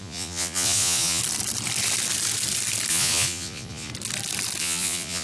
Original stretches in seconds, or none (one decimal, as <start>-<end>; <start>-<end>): 1.2-2.9; 3.9-4.6